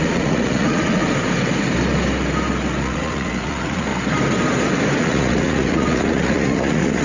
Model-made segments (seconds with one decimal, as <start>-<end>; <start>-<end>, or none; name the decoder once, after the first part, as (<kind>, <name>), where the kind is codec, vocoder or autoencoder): 0.0-1.0 (vocoder, Vocos); 2.8-3.9; 5.0-7.0